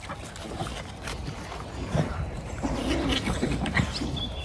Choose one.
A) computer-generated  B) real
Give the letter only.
B